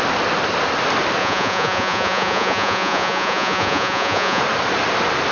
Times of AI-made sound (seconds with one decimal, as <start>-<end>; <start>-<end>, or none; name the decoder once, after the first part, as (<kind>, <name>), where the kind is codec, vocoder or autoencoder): 1.2-4.4 (vocoder, Vocos)